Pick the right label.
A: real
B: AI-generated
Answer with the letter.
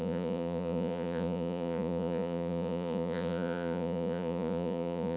B